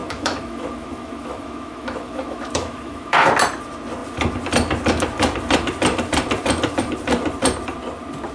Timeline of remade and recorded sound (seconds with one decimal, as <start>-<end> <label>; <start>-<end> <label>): 0.0-3.3 remade; 3.3-8.3 recorded